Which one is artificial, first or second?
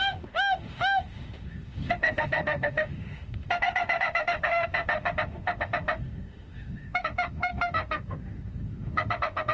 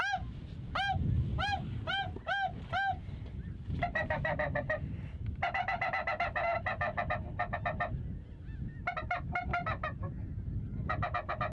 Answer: first